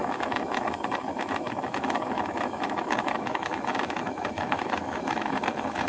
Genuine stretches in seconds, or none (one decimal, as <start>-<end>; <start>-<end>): none